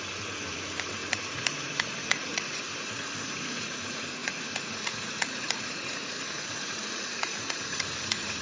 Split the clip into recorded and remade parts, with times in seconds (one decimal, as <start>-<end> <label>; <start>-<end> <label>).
0.0-8.4 remade